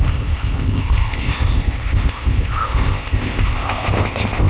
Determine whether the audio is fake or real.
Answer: fake